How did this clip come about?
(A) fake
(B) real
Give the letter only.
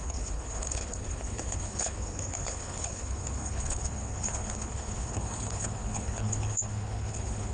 A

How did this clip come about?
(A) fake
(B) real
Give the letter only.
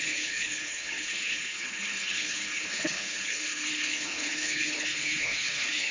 A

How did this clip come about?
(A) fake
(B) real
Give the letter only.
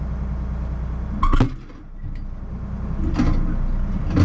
B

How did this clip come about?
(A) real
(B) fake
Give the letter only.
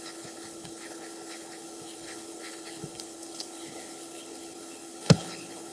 B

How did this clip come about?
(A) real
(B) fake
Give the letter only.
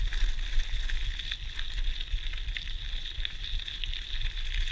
A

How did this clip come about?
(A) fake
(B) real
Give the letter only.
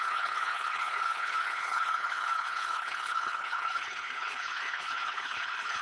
A